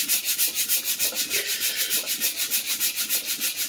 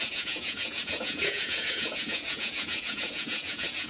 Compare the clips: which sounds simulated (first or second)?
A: second